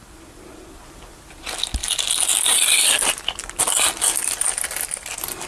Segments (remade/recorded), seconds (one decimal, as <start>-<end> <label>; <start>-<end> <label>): 0.0-5.5 recorded